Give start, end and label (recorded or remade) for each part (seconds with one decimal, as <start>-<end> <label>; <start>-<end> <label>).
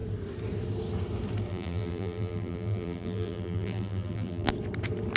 0.0-1.5 recorded; 1.5-4.5 remade; 4.5-5.2 recorded